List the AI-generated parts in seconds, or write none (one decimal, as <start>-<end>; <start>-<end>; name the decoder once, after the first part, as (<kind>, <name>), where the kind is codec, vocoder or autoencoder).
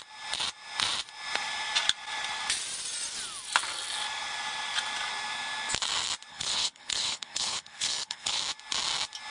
6.3-8.4 (codec, HILCodec)